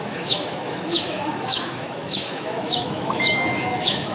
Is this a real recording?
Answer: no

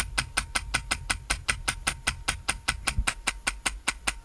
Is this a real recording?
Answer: yes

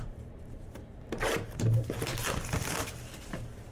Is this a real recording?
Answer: no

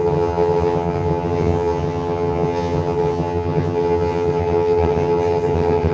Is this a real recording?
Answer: no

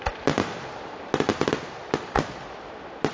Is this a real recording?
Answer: yes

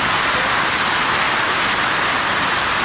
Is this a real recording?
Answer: yes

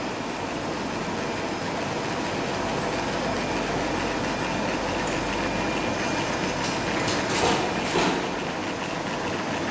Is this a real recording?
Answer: yes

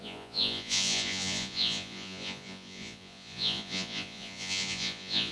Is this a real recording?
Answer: no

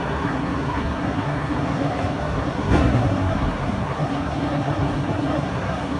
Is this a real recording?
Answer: no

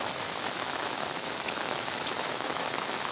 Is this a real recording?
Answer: no